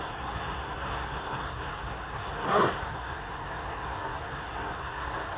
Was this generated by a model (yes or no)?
yes